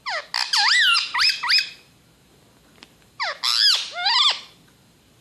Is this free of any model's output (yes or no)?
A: yes